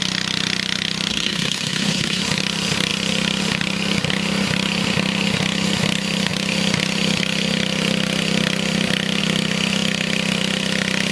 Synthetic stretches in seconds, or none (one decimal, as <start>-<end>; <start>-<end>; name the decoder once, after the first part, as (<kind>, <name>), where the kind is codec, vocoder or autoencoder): 1.1-2.2 (codec, SNAC)